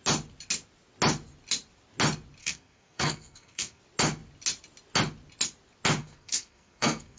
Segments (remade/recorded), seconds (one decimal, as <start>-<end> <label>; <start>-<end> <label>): 0.0-2.4 recorded; 2.4-3.8 remade; 3.8-6.0 recorded; 6.0-7.2 remade